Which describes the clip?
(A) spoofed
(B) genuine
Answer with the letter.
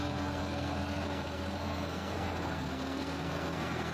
A